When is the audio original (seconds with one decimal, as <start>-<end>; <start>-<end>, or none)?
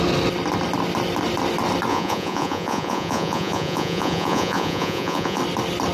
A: 0.0-1.9; 5.4-5.9